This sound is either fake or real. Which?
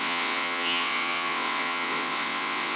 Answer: fake